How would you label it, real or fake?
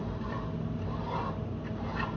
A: real